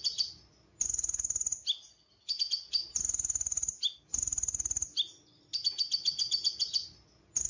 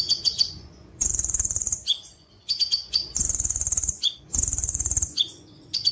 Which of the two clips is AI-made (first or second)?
second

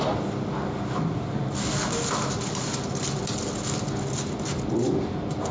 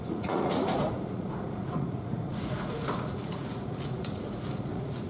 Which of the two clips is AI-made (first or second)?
second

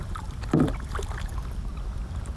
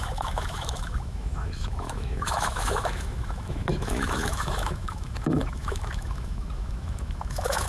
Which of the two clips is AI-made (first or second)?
second